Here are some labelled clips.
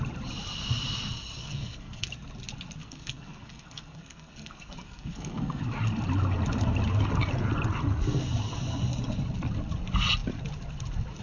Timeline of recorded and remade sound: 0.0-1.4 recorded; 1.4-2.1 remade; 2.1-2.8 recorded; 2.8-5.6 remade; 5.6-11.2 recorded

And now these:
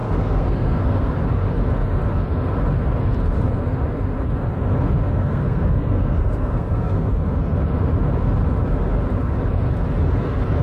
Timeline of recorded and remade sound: 0.0-1.1 remade; 1.1-5.3 recorded; 5.3-7.1 remade; 7.1-10.6 recorded

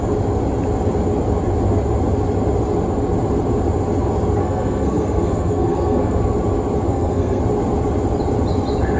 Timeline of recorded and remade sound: 0.0-4.4 recorded; 4.4-6.2 remade; 6.2-6.9 recorded; 6.9-7.4 remade; 7.4-9.0 recorded